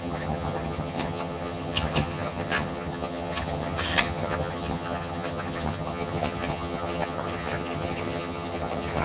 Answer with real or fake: fake